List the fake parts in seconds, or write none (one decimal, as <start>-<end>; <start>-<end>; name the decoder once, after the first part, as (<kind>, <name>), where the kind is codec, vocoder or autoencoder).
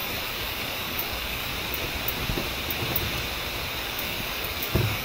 0.0-1.5 (codec, DAC); 3.7-5.0